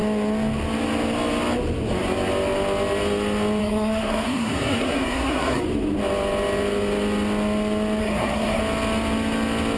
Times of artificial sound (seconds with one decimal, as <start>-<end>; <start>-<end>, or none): 3.6-5.6; 8.0-8.6